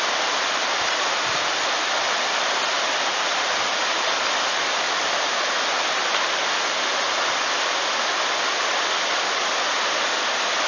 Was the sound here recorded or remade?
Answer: recorded